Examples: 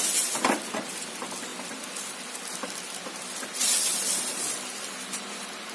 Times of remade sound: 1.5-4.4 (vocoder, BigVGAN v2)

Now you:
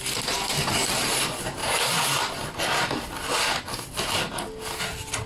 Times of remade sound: none